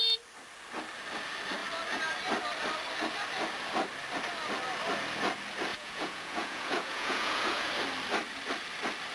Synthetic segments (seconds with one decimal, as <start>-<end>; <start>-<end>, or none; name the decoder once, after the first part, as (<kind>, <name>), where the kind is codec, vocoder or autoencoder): 5.7-7.7 (vocoder, Vocos)